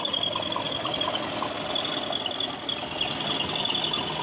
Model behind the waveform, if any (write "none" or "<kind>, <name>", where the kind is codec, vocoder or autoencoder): vocoder, BigVGAN v2